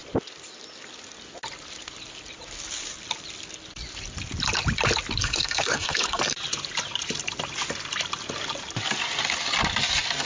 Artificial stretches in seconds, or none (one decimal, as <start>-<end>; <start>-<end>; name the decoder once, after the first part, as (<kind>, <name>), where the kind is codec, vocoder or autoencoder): 5.2-6.2 (codec, SNAC)